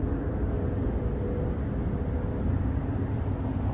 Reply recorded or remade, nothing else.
recorded